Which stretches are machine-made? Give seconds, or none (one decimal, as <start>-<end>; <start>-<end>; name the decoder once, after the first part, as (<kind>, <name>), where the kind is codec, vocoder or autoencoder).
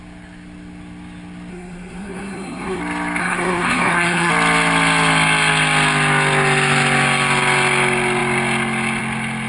1.5-2.8 (codec, SNAC); 3.2-4.3